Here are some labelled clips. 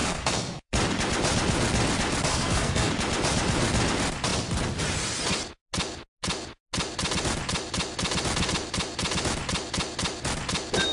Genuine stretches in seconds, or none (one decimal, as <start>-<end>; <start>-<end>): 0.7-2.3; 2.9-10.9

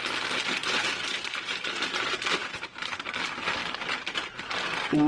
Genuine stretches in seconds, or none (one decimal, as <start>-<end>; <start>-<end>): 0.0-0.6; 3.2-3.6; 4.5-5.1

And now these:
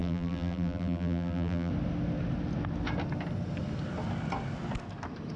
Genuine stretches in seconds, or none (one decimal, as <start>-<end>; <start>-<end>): 1.7-5.4

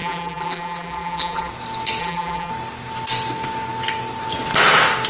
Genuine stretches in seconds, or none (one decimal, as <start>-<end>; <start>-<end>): 1.5-2.0; 2.5-5.1

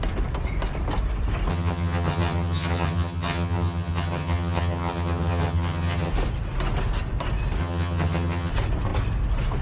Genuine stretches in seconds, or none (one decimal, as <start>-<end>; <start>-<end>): 0.0-1.5; 6.1-7.6; 8.5-9.6

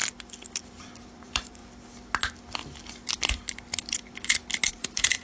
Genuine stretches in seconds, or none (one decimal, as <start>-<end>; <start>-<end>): 0.0-0.8; 1.6-4.7

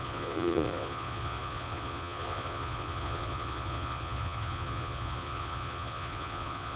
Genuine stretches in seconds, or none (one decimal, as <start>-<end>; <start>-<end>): none